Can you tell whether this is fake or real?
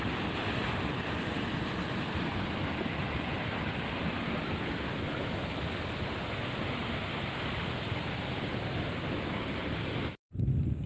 real